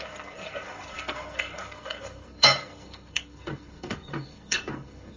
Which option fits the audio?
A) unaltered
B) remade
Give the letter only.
B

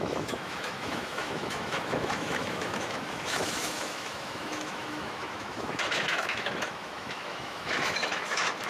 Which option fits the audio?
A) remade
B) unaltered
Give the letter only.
A